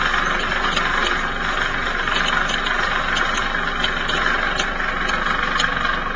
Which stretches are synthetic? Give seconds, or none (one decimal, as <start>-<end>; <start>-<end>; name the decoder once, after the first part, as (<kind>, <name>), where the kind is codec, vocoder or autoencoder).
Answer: none

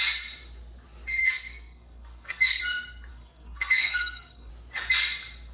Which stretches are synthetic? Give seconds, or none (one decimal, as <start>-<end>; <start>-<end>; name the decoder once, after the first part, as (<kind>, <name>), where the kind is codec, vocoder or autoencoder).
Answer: 1.2-2.6 (codec, SNAC); 3.1-4.5

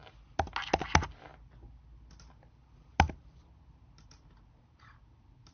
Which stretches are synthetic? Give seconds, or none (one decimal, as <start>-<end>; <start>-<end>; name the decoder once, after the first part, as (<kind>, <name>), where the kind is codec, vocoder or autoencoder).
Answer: none

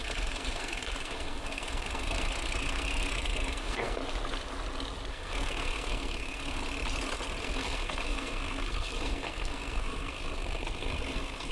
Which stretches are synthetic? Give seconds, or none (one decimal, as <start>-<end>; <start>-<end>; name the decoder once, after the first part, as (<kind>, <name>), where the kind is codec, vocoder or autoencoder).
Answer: 0.0-4.0 (codec, SNAC); 5.1-6.6; 7.4-11.5

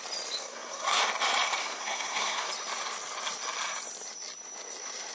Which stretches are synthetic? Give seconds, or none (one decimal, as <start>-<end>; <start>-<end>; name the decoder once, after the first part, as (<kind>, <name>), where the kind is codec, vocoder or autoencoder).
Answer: 0.4-1.0 (codec, SNAC); 1.6-2.5

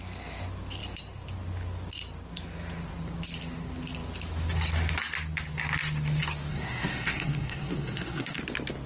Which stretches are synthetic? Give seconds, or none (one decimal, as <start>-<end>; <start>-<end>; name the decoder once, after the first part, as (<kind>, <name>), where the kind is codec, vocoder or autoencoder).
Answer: 6.5-8.4 (codec, SNAC)

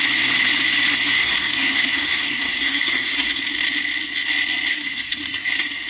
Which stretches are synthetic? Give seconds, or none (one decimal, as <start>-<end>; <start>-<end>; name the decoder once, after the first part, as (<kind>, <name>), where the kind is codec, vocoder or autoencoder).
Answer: 1.1-3.4 (codec, SNAC); 4.7-5.5